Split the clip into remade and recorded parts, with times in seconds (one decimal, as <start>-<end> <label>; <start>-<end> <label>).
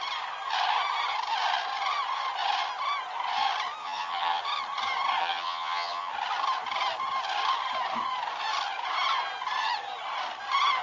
0.0-3.8 recorded; 3.8-4.4 remade; 4.4-5.2 recorded; 5.2-6.1 remade; 6.1-10.8 recorded